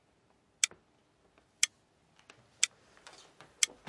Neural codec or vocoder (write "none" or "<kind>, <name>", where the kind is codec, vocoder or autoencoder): none